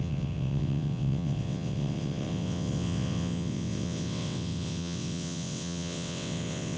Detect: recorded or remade remade